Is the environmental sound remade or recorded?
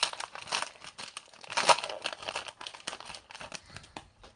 recorded